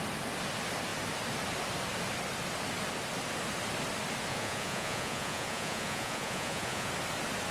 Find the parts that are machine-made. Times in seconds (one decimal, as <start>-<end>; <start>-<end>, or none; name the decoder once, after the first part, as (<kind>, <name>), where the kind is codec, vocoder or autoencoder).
4.3-6.9 (vocoder, Vocos)